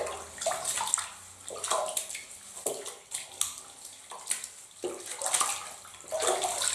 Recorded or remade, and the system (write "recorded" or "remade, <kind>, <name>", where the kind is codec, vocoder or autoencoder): recorded